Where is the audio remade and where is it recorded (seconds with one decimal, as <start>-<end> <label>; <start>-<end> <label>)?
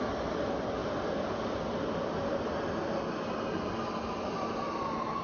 0.0-5.2 recorded